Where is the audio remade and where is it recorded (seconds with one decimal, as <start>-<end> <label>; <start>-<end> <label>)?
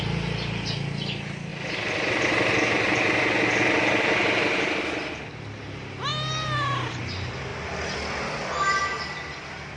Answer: 0.0-9.8 recorded